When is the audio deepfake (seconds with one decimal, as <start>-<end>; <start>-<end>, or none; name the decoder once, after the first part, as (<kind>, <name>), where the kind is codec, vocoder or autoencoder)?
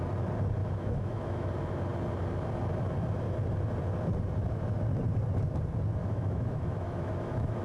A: 0.6-1.5 (autoencoder, DAC-VAE); 6.0-7.6